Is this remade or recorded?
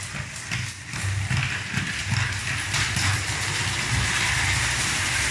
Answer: recorded